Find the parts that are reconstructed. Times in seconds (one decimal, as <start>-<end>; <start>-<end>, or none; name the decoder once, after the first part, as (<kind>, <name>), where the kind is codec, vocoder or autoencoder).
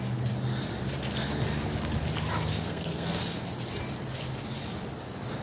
2.5-3.2 (codec, SNAC)